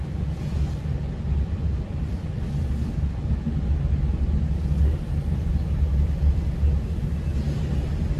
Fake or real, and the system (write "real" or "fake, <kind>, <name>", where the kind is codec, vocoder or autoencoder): real